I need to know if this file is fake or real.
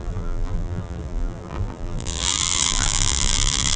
fake